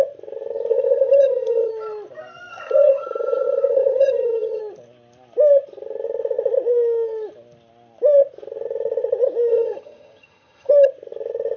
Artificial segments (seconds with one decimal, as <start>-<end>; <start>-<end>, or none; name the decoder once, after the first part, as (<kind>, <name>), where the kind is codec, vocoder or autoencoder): 0.7-1.7 (vocoder, HiFi-GAN); 2.5-4.6; 9.5-10.7